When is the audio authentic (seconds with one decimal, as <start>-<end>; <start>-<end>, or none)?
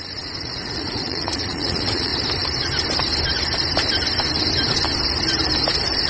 2.1-6.1